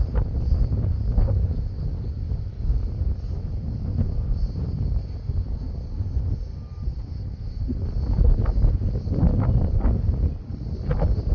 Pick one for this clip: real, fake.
real